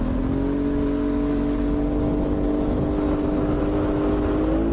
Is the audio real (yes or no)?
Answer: yes